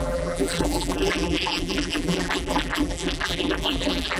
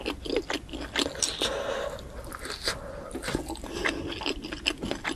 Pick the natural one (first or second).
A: second